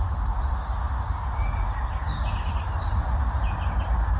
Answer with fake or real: real